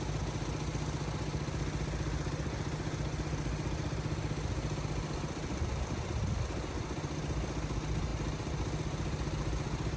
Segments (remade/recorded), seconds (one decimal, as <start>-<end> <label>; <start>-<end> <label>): 0.0-10.0 recorded